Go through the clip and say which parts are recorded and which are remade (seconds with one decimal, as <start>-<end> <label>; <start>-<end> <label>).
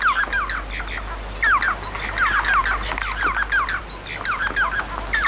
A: 0.0-5.3 recorded